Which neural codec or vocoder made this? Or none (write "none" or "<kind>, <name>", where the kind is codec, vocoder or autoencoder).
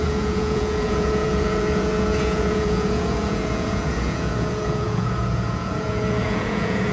vocoder, Vocos